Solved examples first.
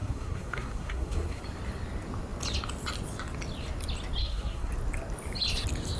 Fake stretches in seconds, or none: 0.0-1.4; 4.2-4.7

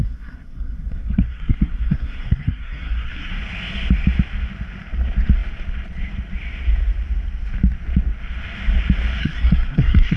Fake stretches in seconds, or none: 0.0-3.3; 9.2-10.2

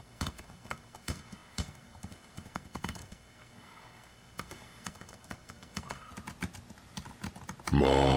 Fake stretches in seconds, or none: 0.0-6.1